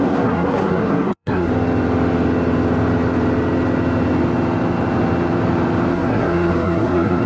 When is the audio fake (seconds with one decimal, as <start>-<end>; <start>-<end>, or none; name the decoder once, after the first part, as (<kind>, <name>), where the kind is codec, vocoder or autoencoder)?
0.0-1.5 (codec, SNAC); 5.9-7.3